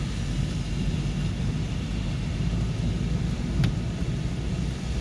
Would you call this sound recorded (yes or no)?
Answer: yes